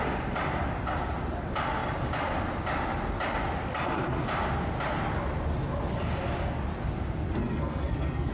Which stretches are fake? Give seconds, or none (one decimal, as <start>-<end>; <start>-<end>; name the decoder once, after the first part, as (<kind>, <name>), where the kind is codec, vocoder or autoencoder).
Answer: 7.4-8.3 (codec, SNAC)